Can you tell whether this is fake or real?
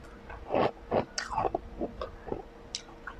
real